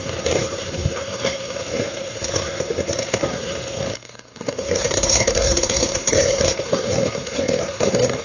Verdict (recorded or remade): remade